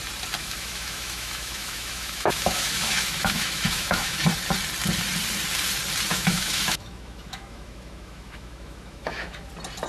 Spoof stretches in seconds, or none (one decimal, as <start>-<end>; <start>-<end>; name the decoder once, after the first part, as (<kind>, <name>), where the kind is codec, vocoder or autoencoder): 0.4-4.2 (autoencoder, DAC-VAE); 6.1-9.5